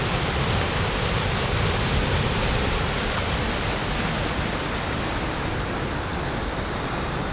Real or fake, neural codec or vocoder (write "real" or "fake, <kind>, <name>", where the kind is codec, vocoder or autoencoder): real